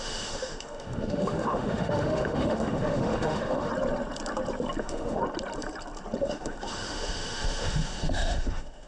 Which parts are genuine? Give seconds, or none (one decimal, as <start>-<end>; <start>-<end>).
3.7-4.8; 5.2-6.2